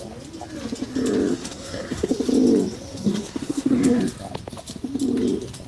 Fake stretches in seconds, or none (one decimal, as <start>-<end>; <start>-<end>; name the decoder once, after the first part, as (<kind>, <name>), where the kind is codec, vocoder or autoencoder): 1.3-2.1 (codec, SNAC); 2.9-4.0